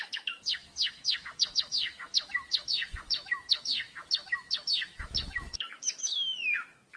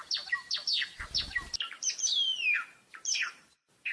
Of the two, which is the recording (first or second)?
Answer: second